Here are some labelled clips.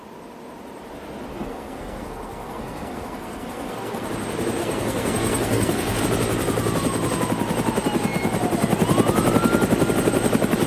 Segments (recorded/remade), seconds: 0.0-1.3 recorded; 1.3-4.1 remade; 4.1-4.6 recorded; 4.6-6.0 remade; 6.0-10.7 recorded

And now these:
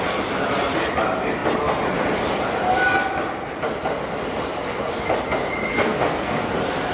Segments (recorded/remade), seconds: 0.0-5.7 recorded; 5.7-6.5 remade; 6.5-6.9 recorded

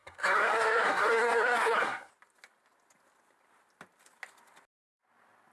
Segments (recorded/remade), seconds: 0.0-2.1 remade; 2.1-5.5 recorded